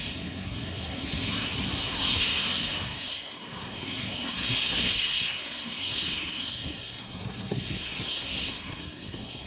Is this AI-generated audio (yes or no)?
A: yes